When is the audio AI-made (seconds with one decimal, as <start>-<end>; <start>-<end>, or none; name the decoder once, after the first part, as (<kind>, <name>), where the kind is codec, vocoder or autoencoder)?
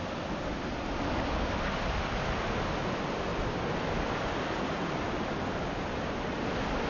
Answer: none